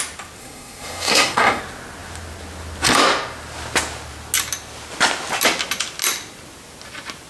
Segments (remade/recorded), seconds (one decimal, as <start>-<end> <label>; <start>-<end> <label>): 0.0-0.4 recorded; 0.4-1.6 remade; 1.6-7.3 recorded